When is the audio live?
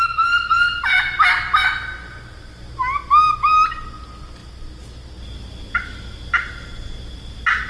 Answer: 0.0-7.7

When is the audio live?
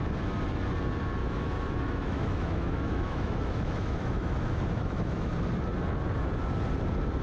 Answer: 0.0-1.2; 5.3-7.2